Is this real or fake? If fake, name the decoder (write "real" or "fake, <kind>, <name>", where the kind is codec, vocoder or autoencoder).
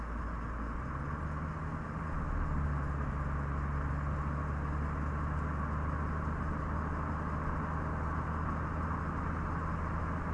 real